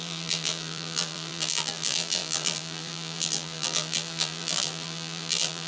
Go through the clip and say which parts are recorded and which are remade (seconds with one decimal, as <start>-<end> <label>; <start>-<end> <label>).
0.0-5.7 remade